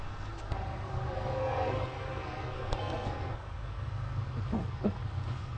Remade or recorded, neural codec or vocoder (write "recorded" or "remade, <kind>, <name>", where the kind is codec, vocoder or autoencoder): remade, codec, SNAC